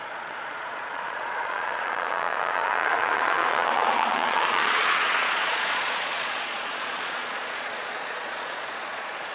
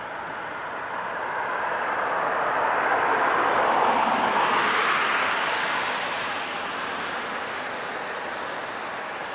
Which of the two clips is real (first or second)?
second